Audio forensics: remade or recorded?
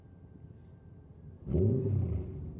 remade